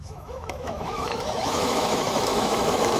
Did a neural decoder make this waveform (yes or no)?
yes